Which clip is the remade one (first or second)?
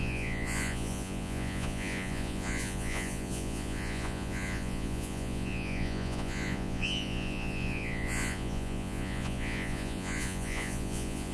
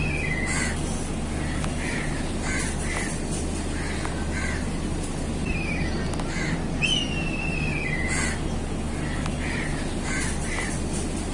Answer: first